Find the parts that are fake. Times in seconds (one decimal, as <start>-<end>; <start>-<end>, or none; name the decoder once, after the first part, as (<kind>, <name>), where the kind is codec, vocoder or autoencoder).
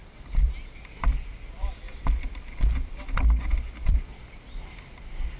0.0-4.1 (vocoder, BigVGAN v2)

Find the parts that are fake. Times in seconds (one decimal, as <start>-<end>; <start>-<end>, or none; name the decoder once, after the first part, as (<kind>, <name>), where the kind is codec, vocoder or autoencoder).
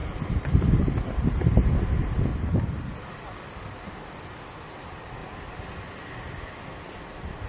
0.0-1.3 (vocoder, BigVGAN v2); 2.3-2.9; 5.2-6.1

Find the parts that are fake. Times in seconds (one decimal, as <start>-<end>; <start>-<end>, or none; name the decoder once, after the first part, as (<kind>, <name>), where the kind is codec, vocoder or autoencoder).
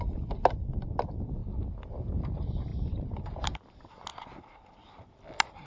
2.7-3.6 (vocoder, BigVGAN v2)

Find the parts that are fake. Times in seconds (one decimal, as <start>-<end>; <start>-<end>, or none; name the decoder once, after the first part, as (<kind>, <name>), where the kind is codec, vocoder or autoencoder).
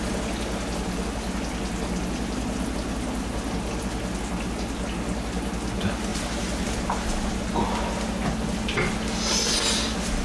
6.1-6.6 (vocoder, BigVGAN v2)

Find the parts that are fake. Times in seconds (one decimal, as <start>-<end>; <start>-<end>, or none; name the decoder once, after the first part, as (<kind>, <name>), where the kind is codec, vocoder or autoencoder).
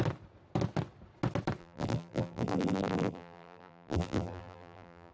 1.6-5.1 (vocoder, BigVGAN v2)